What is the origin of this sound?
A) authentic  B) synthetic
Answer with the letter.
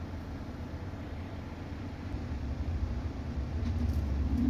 B